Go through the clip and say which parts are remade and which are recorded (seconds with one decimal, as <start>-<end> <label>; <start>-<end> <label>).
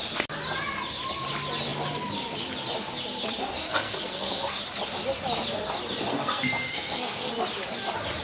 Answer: 0.0-3.7 recorded; 3.7-4.6 remade; 4.6-6.1 recorded; 6.1-7.3 remade; 7.3-8.2 recorded